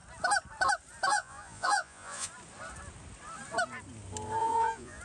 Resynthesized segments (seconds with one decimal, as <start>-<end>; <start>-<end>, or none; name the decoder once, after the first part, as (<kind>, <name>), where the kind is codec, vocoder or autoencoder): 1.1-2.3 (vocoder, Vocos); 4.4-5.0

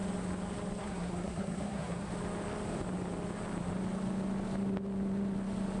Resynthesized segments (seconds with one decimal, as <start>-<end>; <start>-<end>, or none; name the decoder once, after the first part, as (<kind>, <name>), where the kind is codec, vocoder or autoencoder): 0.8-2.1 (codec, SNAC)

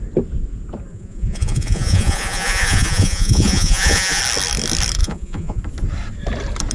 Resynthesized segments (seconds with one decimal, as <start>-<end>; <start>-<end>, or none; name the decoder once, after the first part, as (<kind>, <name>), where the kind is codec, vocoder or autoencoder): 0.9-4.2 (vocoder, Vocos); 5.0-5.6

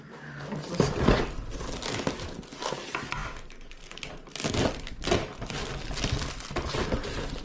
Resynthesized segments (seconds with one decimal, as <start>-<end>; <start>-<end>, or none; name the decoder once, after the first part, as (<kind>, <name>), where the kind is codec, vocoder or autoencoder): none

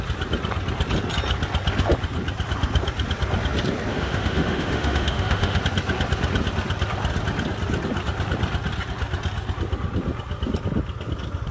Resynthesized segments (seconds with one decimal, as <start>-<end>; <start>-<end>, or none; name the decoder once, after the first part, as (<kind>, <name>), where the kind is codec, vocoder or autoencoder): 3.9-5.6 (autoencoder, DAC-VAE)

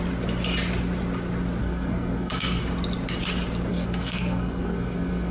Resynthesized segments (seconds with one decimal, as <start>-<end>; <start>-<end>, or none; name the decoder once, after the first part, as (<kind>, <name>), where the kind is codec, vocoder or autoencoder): 1.6-2.6 (codec, SNAC); 3.7-5.3

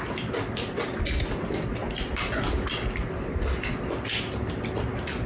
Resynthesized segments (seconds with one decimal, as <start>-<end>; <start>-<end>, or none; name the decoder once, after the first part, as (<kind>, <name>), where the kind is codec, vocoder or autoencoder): none